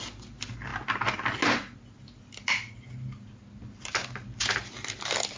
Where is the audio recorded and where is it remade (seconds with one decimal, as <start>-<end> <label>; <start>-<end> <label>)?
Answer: 0.0-5.4 recorded